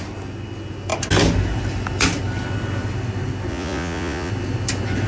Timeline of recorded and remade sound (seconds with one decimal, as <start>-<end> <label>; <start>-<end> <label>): 0.0-3.5 recorded; 3.5-4.3 remade; 4.3-5.1 recorded